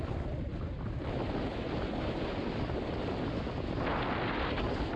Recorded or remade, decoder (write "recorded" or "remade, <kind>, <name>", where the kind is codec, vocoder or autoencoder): recorded